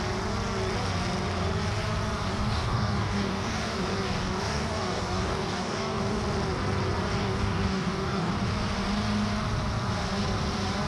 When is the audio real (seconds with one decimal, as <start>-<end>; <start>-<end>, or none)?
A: 0.0-2.3; 6.2-7.2; 8.3-10.9